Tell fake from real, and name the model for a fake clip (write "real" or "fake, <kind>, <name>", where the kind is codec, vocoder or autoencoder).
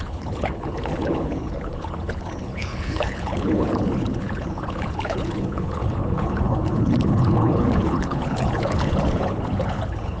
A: fake, codec, HILCodec